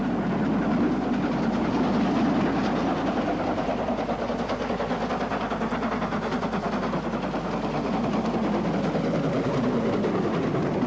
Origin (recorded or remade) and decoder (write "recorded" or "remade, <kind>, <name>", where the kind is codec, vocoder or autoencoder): recorded